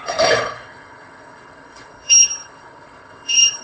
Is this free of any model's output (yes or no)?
no